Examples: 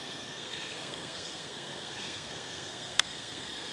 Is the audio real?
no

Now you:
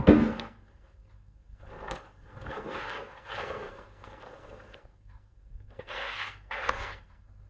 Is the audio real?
no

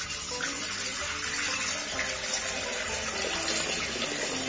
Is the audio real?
yes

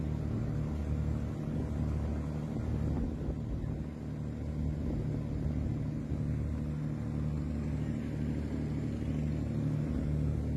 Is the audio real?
yes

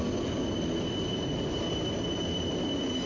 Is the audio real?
yes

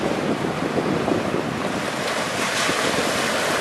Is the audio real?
yes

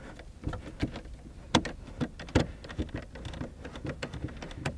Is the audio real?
yes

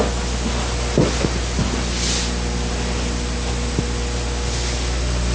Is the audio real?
yes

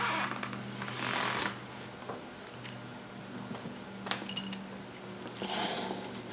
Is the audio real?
yes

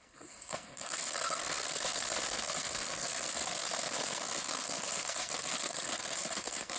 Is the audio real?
no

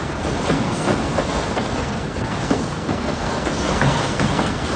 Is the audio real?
no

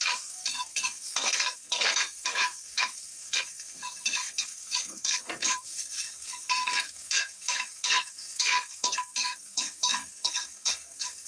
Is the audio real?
no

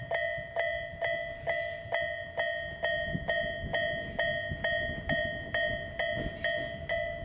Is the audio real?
yes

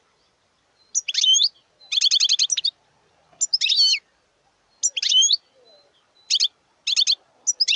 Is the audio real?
yes